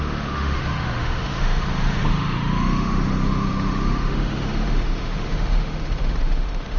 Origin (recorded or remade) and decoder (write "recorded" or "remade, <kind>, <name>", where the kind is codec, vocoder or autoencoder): remade, autoencoder, DAC-VAE